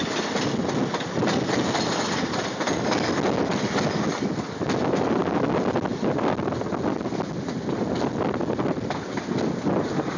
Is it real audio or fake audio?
real